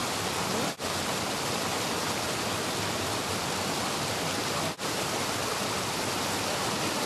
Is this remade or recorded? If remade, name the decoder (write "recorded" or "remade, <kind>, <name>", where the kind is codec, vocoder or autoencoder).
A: recorded